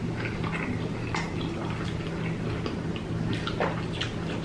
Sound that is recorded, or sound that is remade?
recorded